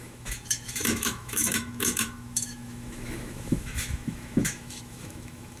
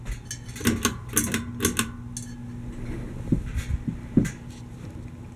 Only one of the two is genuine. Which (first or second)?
second